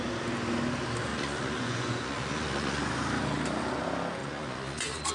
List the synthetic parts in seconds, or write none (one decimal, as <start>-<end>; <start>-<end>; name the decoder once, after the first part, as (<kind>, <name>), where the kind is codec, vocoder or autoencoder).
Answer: 1.1-2.8 (vocoder, Vocos); 4.2-5.1

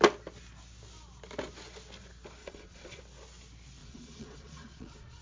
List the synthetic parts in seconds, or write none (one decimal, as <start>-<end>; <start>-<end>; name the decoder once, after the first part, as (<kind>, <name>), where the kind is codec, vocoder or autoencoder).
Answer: 2.4-3.0 (vocoder, Vocos); 3.8-5.2

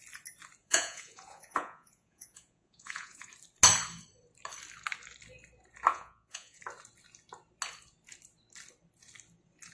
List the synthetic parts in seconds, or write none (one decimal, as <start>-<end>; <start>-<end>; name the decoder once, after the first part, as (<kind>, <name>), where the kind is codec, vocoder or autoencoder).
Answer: 0.6-3.3 (vocoder, Vocos); 5.9-6.6

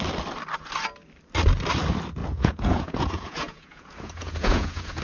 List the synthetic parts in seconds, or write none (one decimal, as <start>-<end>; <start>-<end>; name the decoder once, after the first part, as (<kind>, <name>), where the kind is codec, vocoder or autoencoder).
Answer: 2.2-5.0 (vocoder, Vocos)

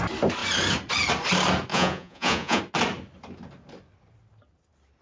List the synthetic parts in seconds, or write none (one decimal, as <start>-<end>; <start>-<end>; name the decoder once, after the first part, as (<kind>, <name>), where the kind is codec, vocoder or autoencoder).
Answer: 1.7-2.6 (vocoder, Vocos)